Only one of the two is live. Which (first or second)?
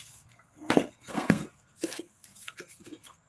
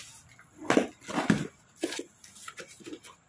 second